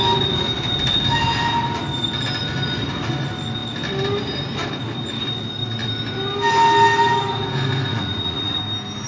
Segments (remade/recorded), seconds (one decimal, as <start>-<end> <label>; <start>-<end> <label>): 0.0-7.9 recorded; 7.9-8.6 remade; 8.6-9.1 recorded